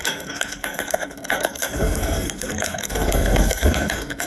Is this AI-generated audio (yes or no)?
yes